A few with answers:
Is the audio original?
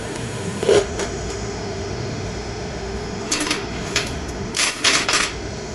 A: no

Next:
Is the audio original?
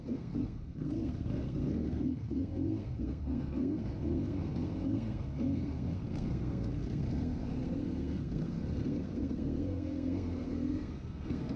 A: no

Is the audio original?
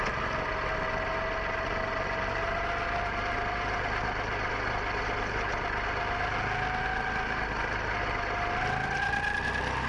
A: yes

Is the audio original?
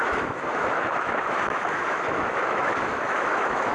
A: no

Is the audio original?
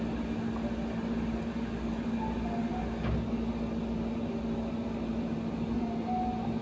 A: yes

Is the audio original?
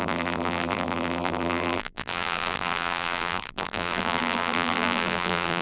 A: no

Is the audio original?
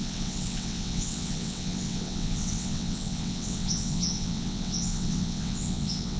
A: no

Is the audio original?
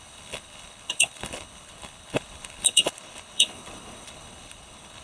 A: no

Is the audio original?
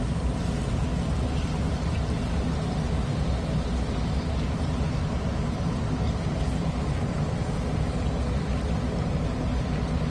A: yes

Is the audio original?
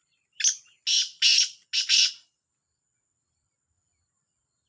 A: yes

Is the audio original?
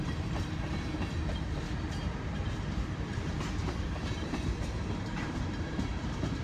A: no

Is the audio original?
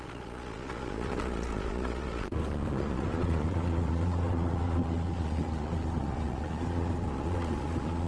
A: no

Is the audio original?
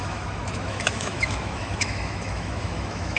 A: no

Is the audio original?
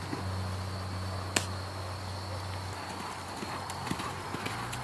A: yes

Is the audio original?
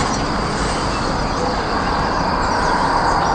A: yes